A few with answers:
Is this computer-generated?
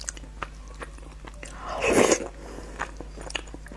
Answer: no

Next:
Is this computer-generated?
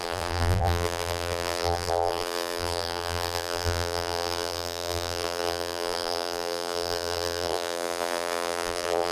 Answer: yes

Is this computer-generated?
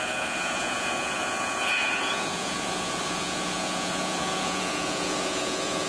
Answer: yes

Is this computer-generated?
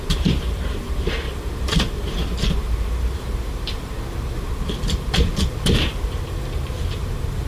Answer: yes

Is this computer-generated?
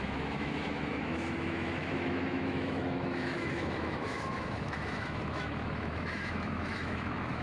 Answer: yes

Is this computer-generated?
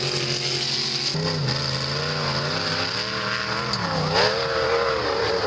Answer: no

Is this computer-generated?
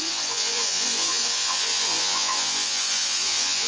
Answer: yes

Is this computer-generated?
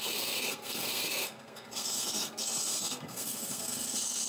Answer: yes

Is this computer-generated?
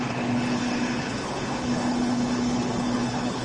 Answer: yes